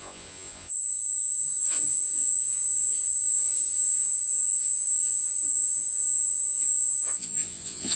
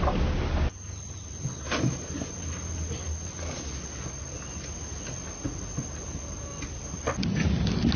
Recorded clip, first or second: second